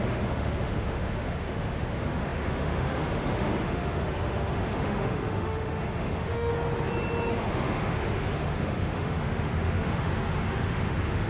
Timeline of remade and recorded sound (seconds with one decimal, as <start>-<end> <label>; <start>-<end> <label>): 0.0-6.5 remade; 6.5-7.3 recorded; 7.3-11.3 remade